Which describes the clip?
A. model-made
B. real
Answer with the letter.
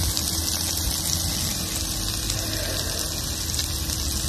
B